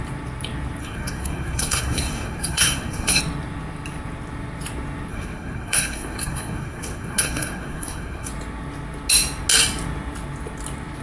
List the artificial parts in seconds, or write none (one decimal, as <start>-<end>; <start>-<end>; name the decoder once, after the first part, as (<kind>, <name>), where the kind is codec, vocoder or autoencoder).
0.8-3.2 (codec, SNAC); 5.1-8.3